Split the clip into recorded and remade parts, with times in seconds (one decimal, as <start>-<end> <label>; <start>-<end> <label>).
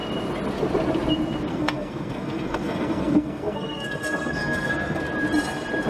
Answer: 0.0-1.5 recorded; 1.5-5.0 remade; 5.0-5.9 recorded